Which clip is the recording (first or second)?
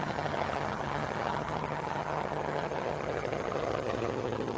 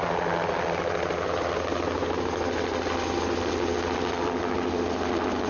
second